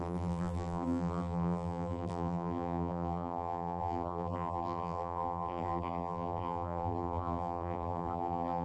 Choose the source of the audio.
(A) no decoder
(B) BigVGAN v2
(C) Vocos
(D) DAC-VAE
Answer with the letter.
B